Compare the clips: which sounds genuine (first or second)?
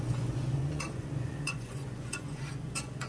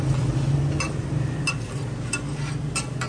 second